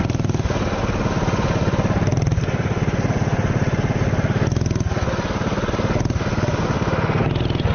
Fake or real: real